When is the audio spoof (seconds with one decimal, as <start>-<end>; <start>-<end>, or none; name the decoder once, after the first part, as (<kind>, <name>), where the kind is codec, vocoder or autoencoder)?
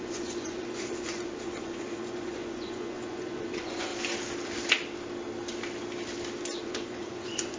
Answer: 0.0-3.9 (vocoder, Vocos); 6.6-7.6